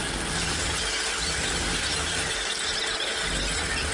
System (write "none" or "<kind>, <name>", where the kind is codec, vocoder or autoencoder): none